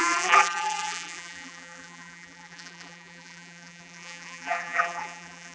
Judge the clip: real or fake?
fake